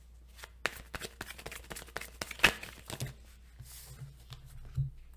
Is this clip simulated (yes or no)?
no